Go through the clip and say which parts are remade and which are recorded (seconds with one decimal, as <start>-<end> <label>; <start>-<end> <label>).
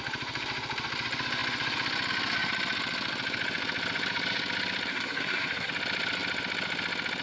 0.0-4.9 recorded; 4.9-5.7 remade; 5.7-7.2 recorded